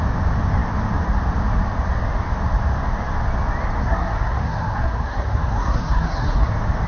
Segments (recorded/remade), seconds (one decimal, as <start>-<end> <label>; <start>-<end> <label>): 0.0-3.8 recorded; 3.8-6.5 remade; 6.5-6.9 recorded